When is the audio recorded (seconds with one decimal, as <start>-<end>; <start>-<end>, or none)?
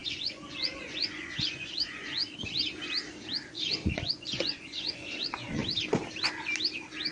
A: 2.2-3.5; 5.6-7.1